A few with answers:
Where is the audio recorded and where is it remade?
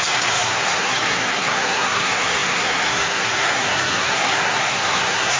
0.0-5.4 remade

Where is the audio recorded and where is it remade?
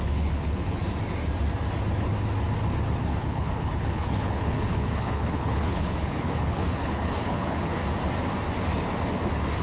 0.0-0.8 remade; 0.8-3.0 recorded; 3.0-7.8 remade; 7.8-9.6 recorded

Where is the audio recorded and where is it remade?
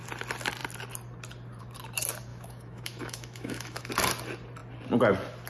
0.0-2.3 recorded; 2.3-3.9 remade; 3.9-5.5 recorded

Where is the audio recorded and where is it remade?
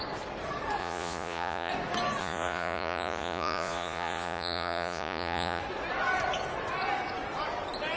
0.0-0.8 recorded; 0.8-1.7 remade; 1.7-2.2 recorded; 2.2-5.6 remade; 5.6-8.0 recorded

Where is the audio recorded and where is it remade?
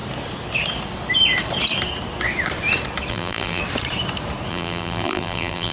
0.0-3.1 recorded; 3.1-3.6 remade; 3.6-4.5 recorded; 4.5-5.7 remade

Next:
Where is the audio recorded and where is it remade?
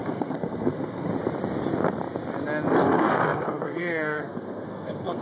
0.0-1.1 remade; 1.1-2.7 recorded; 2.7-5.2 remade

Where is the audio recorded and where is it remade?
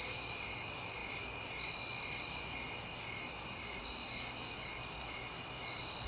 0.0-6.1 recorded